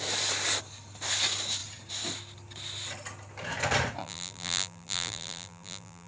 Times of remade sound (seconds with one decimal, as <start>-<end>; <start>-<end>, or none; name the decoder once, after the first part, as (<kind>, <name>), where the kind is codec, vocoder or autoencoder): 4.0-6.1 (vocoder, BigVGAN v2)